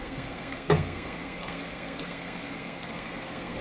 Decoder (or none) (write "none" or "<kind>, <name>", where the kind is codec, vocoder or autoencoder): codec, SNAC